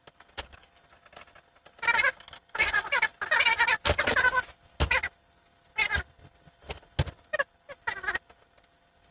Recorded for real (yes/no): yes